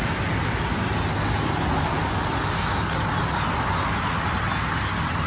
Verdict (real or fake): real